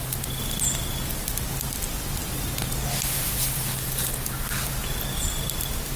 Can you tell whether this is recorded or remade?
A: recorded